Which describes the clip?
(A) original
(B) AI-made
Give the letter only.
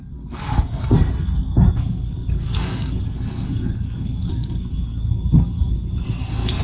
B